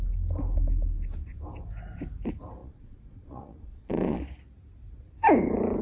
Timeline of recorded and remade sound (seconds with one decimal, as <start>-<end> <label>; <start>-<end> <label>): 0.0-2.6 recorded; 2.6-4.2 remade; 4.2-5.8 recorded